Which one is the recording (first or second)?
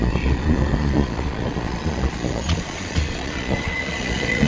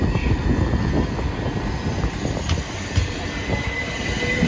second